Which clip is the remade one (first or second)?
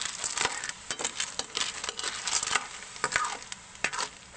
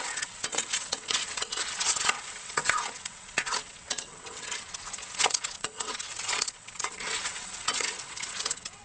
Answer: second